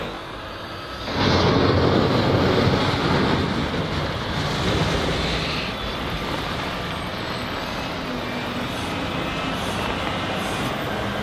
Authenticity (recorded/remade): recorded